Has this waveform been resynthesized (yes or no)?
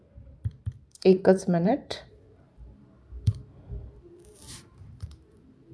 yes